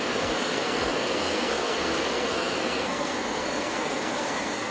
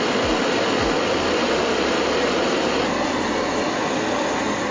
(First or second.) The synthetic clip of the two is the first